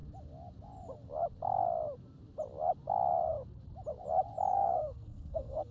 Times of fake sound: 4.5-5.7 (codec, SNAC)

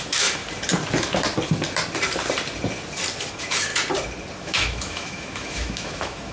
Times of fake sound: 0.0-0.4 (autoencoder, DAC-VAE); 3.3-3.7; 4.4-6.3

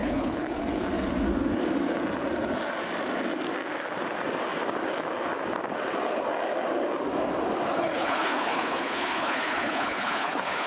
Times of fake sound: 0.0-0.6 (codec, HILCodec); 7.7-10.7